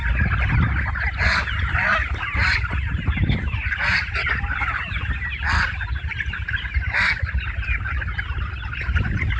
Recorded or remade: recorded